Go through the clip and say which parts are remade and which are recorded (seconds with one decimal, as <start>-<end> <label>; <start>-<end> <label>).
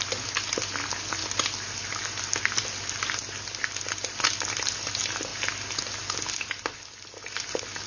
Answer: 0.0-7.9 recorded